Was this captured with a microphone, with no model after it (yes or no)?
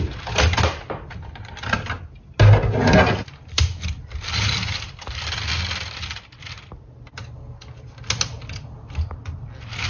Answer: yes